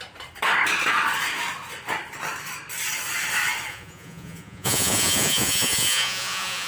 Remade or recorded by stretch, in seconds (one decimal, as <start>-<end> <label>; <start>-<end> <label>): 0.0-3.7 recorded; 3.7-6.7 remade